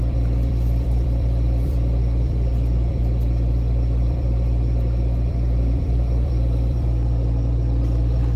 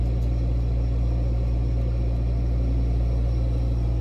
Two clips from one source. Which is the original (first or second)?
second